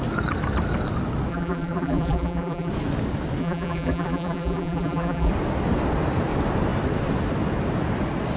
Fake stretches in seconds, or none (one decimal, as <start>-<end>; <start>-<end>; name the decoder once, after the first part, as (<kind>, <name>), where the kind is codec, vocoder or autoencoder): 1.3-2.7 (vocoder, BigVGAN v2); 3.4-5.3